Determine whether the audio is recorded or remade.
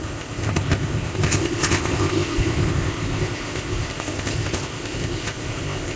remade